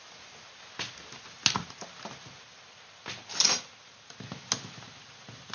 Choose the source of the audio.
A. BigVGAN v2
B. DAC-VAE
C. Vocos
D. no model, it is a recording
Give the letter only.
D